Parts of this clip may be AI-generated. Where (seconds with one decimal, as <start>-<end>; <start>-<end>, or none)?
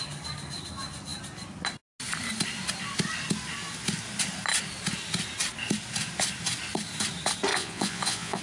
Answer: 7.5-8.4